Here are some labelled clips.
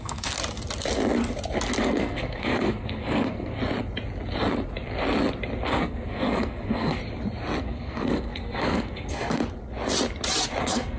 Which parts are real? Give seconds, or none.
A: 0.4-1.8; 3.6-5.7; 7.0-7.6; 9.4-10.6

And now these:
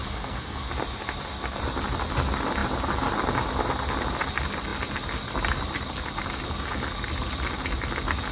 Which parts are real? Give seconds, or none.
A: 0.7-8.3

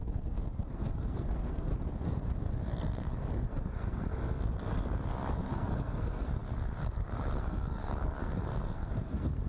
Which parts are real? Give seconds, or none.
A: 1.7-2.8; 4.2-5.3